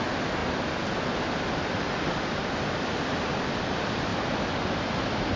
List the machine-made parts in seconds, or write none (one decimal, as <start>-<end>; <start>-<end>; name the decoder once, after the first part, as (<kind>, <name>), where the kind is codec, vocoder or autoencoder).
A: none